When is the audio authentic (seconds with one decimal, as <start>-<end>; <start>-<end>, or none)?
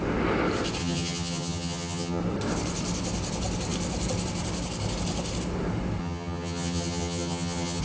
0.0-0.8; 2.2-6.0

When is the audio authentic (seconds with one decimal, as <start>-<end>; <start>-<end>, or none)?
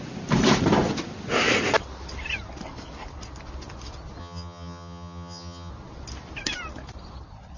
0.0-4.2; 5.7-7.6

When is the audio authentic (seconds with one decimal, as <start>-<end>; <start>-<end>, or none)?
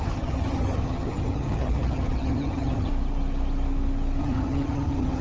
2.9-4.2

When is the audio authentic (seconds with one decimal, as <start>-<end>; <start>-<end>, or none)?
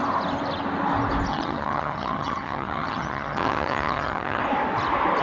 0.0-1.3; 4.4-5.2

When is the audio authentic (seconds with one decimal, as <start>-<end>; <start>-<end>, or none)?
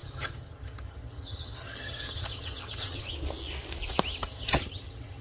3.1-4.2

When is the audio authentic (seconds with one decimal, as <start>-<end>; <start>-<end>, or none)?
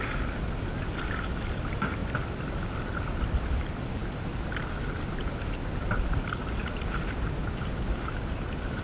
0.0-8.8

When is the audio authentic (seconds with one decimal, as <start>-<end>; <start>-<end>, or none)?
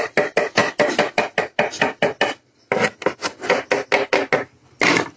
0.0-5.2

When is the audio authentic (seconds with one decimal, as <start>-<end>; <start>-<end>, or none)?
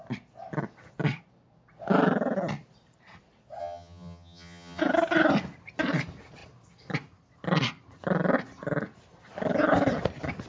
0.0-3.6; 4.8-10.5